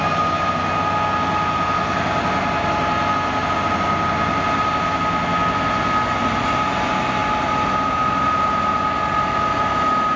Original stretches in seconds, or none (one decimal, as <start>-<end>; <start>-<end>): 0.0-10.2